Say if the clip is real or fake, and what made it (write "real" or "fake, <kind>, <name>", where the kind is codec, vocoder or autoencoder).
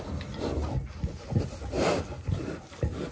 real